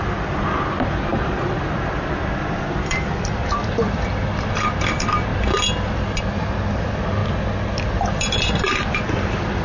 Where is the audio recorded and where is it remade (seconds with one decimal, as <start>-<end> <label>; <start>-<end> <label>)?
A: 0.0-5.3 remade; 5.3-6.2 recorded; 6.2-7.2 remade; 7.2-8.2 recorded; 8.2-9.6 remade